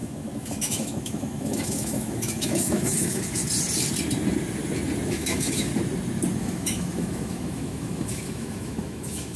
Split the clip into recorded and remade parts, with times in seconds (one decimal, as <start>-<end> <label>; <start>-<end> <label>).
0.0-3.4 remade; 3.4-5.1 recorded; 5.1-5.7 remade; 5.7-6.4 recorded; 6.4-9.4 remade